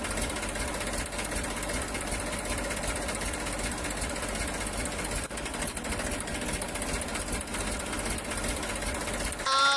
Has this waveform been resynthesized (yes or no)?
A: no